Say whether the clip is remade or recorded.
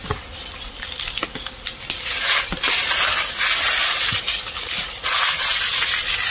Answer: recorded